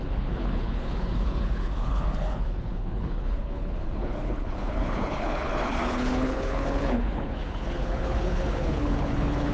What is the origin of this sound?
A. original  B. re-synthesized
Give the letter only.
B